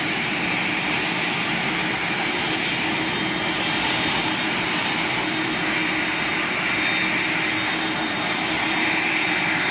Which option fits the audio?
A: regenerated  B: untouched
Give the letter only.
B